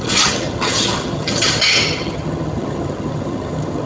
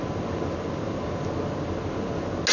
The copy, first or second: first